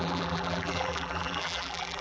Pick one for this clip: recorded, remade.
remade